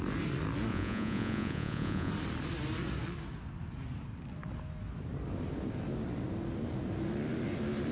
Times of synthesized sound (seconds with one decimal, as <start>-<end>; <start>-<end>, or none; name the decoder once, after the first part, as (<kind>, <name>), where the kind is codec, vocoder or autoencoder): 0.7-2.1 (vocoder, Vocos)